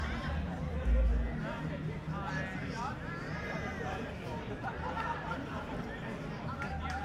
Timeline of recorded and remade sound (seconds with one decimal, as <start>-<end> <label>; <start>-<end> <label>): 0.0-2.6 recorded; 2.6-4.5 remade; 4.5-7.0 recorded